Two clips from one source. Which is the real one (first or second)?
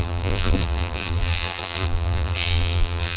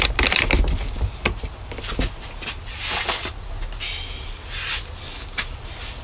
second